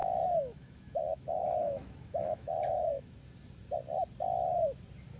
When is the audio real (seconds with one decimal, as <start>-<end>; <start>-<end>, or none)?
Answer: 3.1-5.2

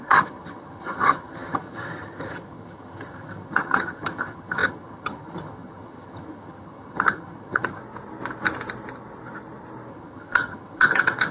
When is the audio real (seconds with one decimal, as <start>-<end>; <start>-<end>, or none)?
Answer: 7.8-9.9

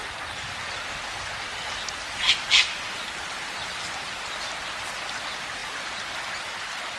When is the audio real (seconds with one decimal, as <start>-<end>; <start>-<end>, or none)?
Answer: 0.0-7.0

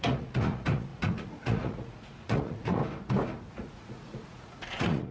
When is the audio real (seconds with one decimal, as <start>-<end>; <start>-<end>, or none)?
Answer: 2.8-3.5

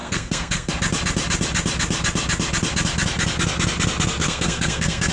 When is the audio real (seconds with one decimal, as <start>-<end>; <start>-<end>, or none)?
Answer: 0.7-4.2